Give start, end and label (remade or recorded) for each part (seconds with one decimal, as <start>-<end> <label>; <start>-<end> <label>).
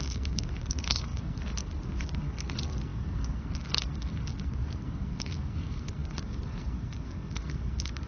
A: 0.0-8.1 remade